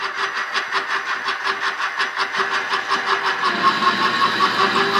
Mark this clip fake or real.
real